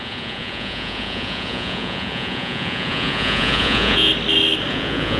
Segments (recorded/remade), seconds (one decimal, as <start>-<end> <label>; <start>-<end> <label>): 0.0-4.1 remade; 4.1-4.7 recorded; 4.7-5.2 remade